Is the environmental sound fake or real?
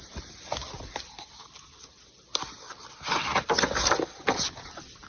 real